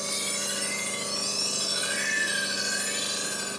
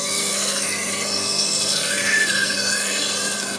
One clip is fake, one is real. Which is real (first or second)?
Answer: first